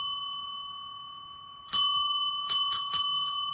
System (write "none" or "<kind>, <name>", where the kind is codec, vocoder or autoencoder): none